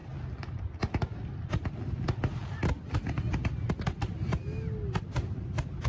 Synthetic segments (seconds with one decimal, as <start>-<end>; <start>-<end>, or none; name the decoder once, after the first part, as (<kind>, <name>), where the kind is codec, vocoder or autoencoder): none